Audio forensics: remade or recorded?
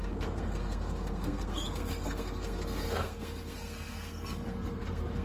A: remade